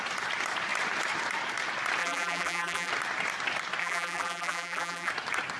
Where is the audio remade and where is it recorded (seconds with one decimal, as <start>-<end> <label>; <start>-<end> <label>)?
0.0-2.0 recorded; 2.0-2.9 remade; 2.9-3.8 recorded; 3.8-5.1 remade; 5.1-5.6 recorded